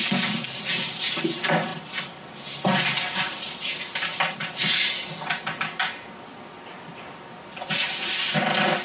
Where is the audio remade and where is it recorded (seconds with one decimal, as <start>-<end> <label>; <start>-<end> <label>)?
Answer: 0.0-8.8 recorded